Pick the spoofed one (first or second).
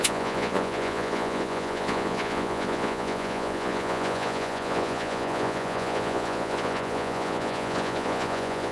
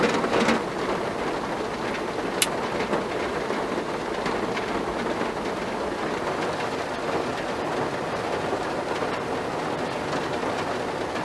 first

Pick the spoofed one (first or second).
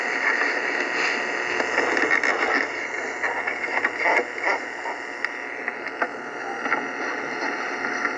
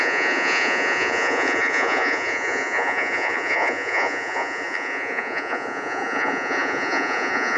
second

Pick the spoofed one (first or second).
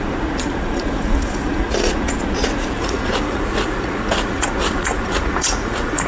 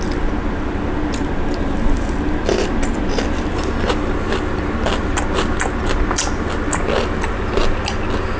first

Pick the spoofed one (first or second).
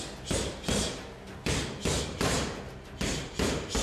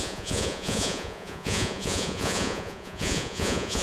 second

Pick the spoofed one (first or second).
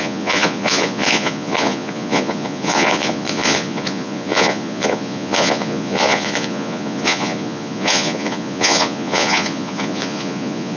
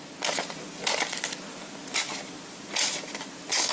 first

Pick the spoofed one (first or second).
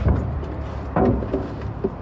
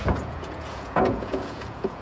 second